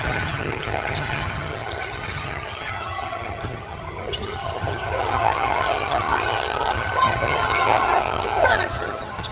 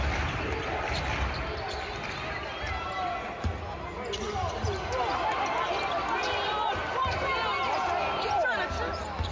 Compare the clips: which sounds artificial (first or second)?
first